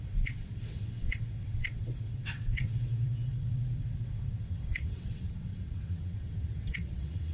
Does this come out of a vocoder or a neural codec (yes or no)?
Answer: yes